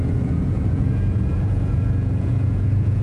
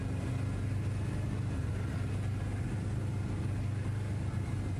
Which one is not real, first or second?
first